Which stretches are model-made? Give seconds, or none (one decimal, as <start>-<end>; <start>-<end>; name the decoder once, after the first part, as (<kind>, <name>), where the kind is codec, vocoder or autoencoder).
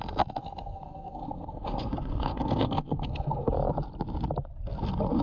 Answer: 0.4-3.5 (codec, SNAC)